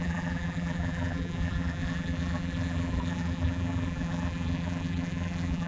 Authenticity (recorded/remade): remade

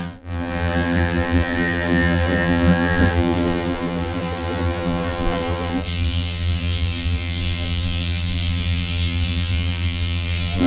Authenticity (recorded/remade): remade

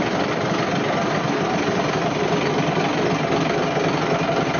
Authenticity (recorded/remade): recorded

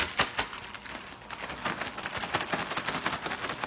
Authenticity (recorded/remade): recorded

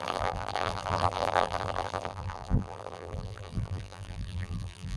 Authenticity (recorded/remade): remade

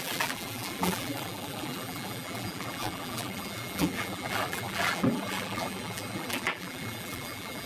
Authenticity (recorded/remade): remade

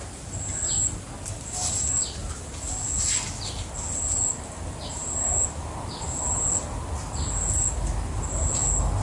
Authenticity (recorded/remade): recorded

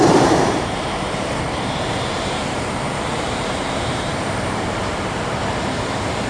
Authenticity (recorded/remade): remade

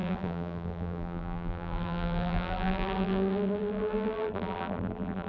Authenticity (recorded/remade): remade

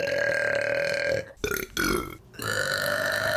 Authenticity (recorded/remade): recorded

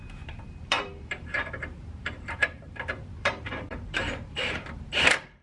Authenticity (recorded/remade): remade